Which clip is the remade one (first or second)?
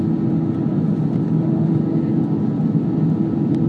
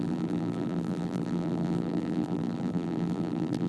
second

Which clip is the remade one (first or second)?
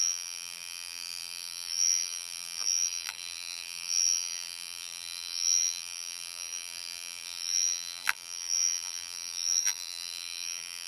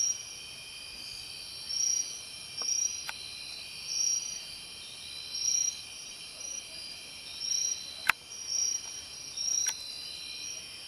first